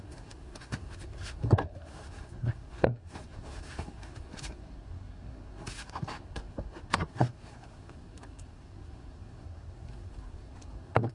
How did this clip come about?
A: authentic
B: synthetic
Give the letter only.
B